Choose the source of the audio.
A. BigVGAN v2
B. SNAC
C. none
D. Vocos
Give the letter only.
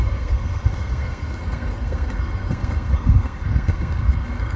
B